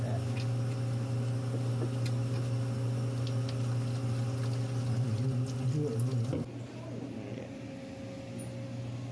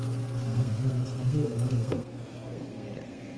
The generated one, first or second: second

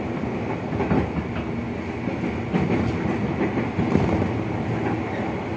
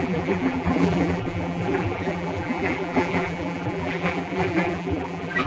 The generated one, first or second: second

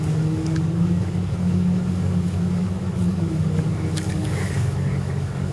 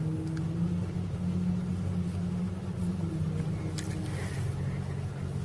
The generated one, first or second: first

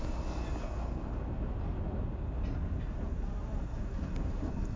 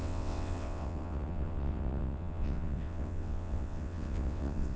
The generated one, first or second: second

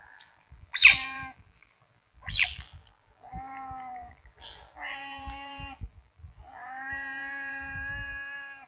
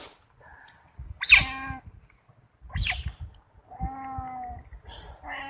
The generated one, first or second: first